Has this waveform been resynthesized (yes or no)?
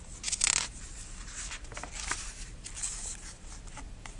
no